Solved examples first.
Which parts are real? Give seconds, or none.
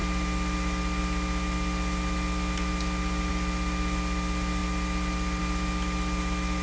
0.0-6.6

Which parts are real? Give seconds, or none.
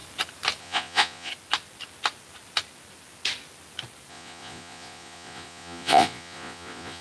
0.0-0.6; 1.3-4.1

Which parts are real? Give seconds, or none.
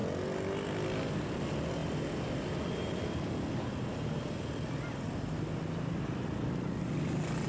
0.0-7.5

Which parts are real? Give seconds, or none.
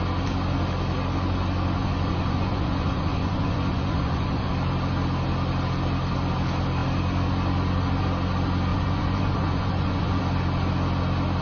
0.0-1.8; 4.5-8.7; 10.2-11.4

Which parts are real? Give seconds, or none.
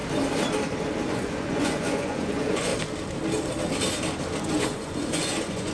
0.0-1.1; 2.7-4.4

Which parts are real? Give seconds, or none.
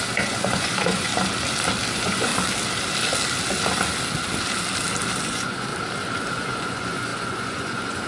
1.1-1.9; 2.3-5.2; 5.7-6.3